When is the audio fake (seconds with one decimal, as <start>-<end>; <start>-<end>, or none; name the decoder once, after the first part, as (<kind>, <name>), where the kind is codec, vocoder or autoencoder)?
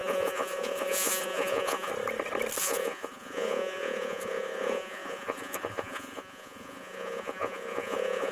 0.0-1.9 (vocoder, Vocos); 2.6-8.3